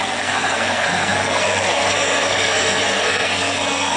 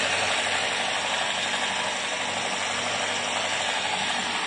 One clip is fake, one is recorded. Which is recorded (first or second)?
second